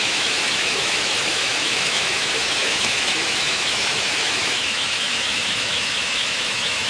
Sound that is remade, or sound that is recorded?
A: remade